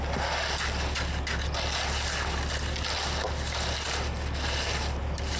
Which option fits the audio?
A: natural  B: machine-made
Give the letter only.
A